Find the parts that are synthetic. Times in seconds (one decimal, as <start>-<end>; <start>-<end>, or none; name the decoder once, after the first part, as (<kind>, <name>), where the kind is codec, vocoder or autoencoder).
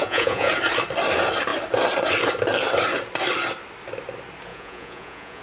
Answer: 0.0-0.5 (vocoder, Vocos); 4.5-5.4